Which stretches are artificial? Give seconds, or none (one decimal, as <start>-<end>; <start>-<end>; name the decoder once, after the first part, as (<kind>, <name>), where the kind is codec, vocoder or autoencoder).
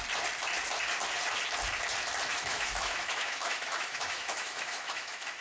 2.3-5.4 (autoencoder, DAC-VAE)